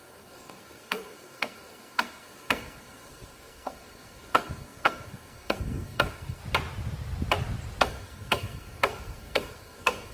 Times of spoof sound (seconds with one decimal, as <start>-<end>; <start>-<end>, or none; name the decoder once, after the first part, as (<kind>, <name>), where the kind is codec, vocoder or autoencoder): 0.0-6.4 (codec, SNAC); 7.8-10.1